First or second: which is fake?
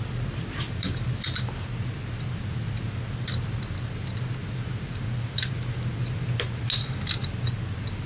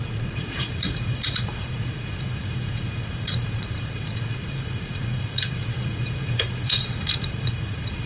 second